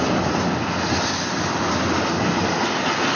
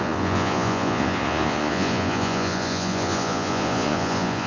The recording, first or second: first